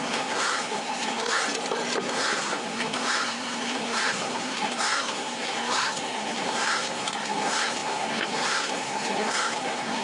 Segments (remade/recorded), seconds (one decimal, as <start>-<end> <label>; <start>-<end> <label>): 0.0-1.4 remade; 1.4-2.0 recorded; 2.0-10.0 remade